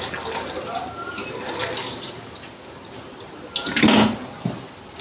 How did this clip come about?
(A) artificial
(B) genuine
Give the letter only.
B